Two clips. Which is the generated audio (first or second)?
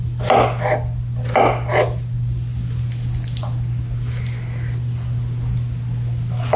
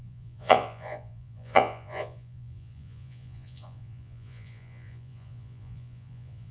second